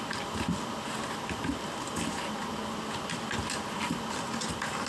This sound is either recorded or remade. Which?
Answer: recorded